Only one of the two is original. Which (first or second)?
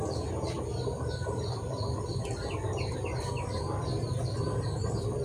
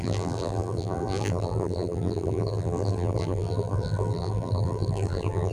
first